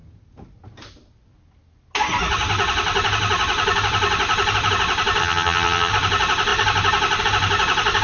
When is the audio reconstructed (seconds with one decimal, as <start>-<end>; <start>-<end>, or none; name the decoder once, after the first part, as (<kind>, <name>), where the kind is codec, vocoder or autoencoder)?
5.2-5.9 (vocoder, HiFi-GAN)